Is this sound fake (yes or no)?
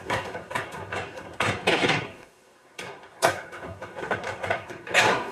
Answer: yes